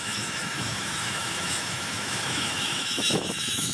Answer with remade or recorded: remade